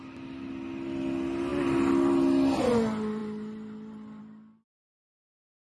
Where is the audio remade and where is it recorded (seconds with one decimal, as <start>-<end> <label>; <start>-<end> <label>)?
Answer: 0.0-5.7 recorded